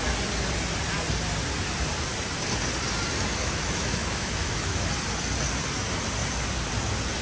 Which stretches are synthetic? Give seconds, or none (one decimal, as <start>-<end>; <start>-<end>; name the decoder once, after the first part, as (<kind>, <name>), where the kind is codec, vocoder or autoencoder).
3.4-4.9 (autoencoder, DAC-VAE)